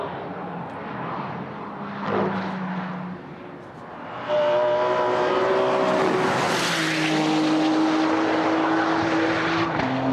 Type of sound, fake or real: real